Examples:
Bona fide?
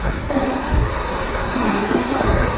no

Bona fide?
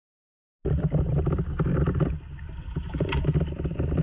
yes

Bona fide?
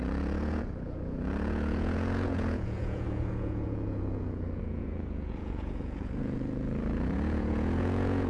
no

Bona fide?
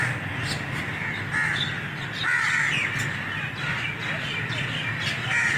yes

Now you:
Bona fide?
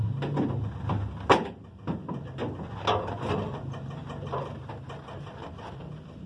yes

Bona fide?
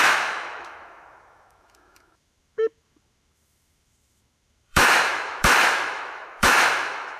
no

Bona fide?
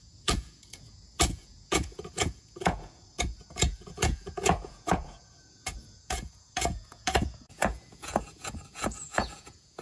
no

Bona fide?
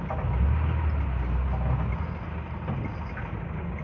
yes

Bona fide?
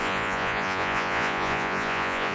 no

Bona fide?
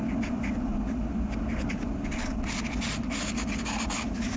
yes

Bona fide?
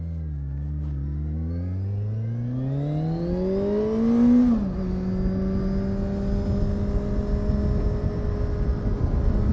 yes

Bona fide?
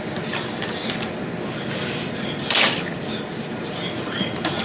yes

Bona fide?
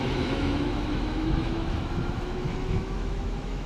no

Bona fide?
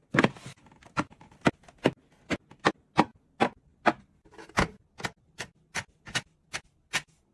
yes